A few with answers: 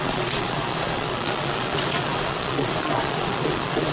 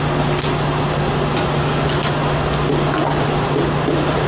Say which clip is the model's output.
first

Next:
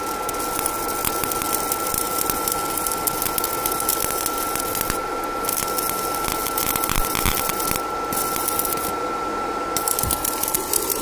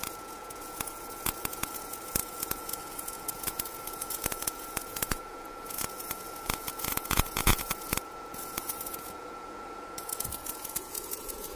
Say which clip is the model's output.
second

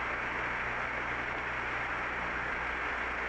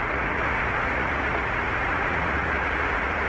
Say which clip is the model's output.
second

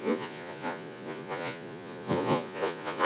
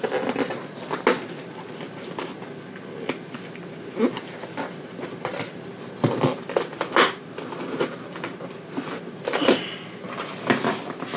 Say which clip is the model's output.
first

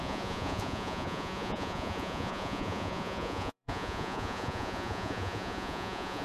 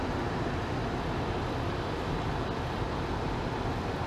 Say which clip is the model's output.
first